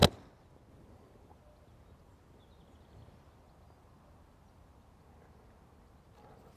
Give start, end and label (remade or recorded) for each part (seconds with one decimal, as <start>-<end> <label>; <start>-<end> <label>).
0.0-6.6 recorded